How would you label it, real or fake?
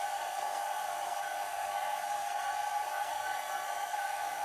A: fake